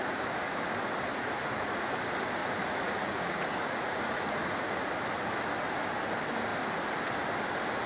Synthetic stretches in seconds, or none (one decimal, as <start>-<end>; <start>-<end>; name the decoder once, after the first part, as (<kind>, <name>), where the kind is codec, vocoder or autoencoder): 1.1-2.0 (vocoder, Vocos); 2.4-4.7